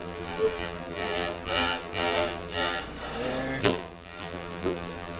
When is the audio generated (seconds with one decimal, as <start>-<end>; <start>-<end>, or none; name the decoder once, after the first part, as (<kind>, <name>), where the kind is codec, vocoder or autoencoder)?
0.0-2.8 (vocoder, BigVGAN v2); 3.6-5.2